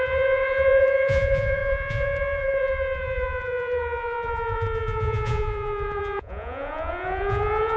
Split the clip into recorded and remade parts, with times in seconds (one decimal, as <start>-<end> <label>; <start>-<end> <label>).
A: 0.0-7.8 remade